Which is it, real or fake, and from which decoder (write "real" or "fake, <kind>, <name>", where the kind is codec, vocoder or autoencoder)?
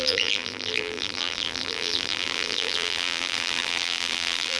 fake, vocoder, BigVGAN v2